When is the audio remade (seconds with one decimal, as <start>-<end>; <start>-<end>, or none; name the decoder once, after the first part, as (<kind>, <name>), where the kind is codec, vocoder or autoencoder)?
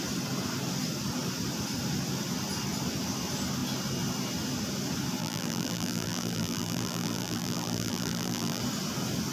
5.2-8.6 (vocoder, BigVGAN v2)